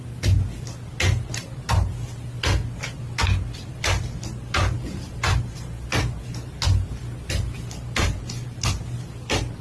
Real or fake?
real